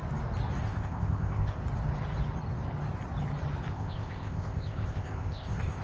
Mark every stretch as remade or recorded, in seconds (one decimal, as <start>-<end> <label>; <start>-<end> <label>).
0.0-0.6 recorded; 0.6-1.6 remade; 1.6-3.7 recorded; 3.7-5.8 remade